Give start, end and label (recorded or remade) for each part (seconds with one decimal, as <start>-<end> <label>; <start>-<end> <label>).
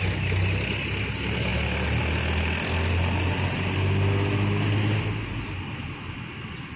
0.0-6.8 recorded